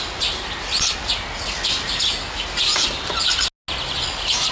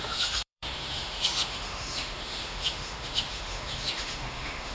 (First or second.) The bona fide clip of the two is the first